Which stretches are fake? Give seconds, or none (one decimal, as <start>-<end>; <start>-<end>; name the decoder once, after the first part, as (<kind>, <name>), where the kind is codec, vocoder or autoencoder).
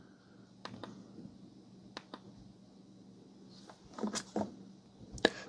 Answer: none